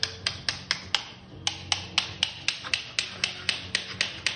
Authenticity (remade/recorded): recorded